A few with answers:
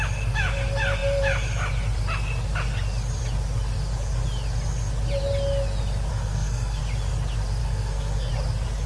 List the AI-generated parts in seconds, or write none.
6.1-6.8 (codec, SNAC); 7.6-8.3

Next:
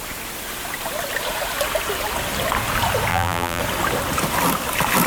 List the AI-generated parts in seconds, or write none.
3.1-3.6 (vocoder, BigVGAN v2)